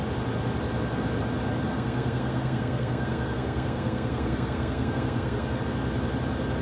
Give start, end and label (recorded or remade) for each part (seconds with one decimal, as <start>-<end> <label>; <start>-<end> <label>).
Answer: 0.0-1.7 recorded; 1.7-5.6 remade; 5.6-6.6 recorded

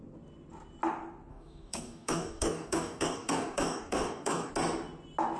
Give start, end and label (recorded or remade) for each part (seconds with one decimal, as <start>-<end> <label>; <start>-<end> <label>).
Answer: 0.0-1.3 recorded; 1.3-4.5 remade; 4.5-5.4 recorded

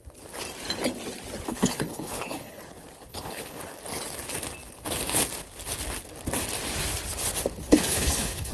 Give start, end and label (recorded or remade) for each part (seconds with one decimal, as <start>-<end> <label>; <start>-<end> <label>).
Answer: 0.0-1.5 recorded; 1.5-2.6 remade; 2.6-3.1 recorded; 3.1-3.6 remade; 3.6-7.6 recorded; 7.6-8.5 remade

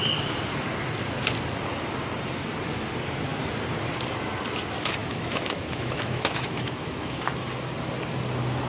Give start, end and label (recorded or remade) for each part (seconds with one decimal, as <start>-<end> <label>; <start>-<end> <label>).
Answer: 0.0-5.0 recorded; 5.0-7.3 remade; 7.3-8.7 recorded

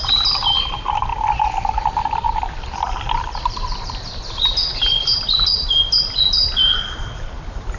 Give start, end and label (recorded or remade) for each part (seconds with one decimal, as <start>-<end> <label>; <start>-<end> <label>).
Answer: 0.0-7.8 recorded

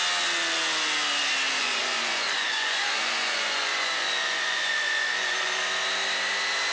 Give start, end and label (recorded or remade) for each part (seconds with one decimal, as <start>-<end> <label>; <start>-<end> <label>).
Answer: 0.0-1.6 recorded; 1.6-5.6 remade; 5.6-6.7 recorded